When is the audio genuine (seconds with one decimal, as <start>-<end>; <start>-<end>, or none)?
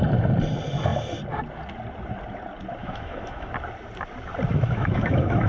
0.0-2.8; 3.5-4.5